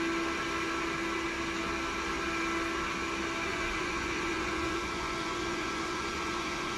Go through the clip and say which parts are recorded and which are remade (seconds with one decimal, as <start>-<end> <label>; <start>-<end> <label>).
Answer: 0.0-3.5 recorded; 3.5-6.8 remade